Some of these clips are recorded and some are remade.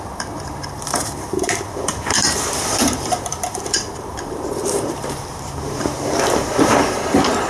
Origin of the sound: remade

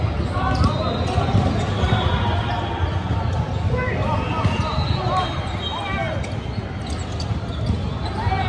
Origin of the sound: recorded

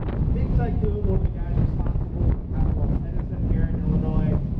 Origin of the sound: recorded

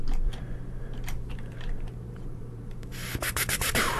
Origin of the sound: remade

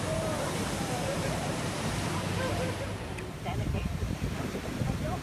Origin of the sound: remade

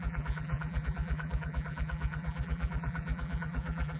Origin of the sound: remade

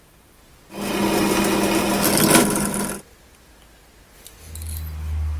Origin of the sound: recorded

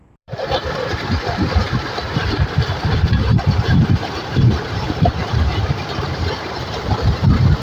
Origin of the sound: remade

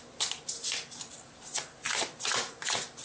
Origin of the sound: remade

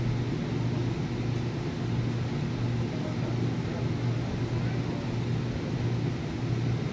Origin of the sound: recorded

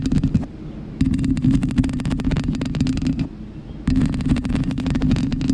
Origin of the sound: recorded